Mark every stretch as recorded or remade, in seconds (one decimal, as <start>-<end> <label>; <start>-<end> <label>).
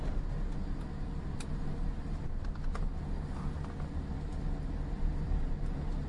0.0-6.1 recorded